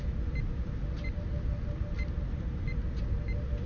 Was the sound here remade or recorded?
recorded